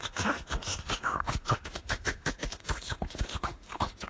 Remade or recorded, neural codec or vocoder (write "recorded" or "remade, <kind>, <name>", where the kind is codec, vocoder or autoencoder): remade, autoencoder, DAC-VAE